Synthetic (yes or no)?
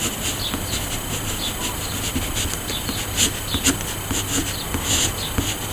no